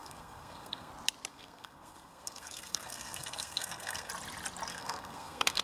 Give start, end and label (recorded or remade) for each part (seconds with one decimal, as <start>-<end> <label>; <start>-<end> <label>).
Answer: 0.0-0.9 remade; 0.9-1.3 recorded; 1.3-4.1 remade; 4.1-4.7 recorded; 4.7-5.6 remade